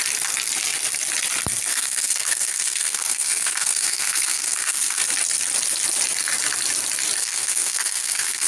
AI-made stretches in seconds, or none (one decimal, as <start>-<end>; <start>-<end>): 1.7-5.0; 7.2-8.5